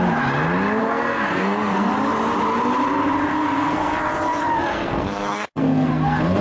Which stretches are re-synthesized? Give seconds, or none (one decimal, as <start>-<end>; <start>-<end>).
0.8-1.9; 3.3-4.0; 4.7-6.4